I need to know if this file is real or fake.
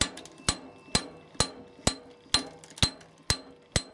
real